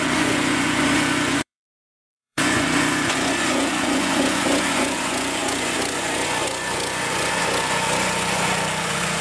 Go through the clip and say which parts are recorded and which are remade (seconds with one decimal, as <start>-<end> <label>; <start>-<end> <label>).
0.0-9.2 remade